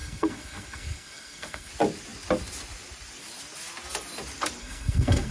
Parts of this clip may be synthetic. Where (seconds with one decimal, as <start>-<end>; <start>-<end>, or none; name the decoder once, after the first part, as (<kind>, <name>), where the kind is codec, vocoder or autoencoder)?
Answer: 0.0-1.7 (codec, SNAC); 4.6-5.3